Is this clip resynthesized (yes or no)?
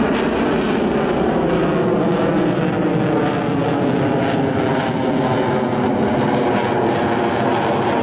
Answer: no